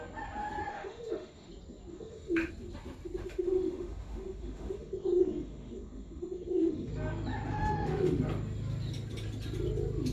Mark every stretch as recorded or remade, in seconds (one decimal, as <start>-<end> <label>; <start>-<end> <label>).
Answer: 0.0-0.7 recorded; 0.7-1.5 remade; 1.5-1.9 recorded; 1.9-2.5 remade; 2.5-3.2 recorded; 3.2-6.9 remade; 6.9-7.5 recorded; 7.5-8.2 remade; 8.2-10.1 recorded